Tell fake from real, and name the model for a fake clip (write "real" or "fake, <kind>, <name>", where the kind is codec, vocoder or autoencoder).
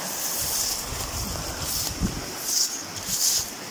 real